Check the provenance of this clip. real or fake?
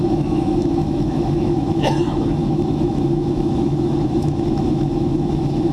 fake